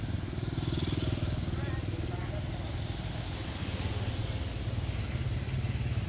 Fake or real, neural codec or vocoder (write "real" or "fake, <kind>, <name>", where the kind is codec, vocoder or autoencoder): real